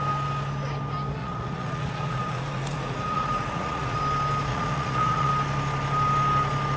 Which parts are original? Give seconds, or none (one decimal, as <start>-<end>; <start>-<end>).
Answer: 0.0-1.2; 4.0-4.5; 5.3-6.8